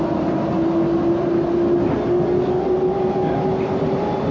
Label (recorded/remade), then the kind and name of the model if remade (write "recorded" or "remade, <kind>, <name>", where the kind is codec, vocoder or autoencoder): recorded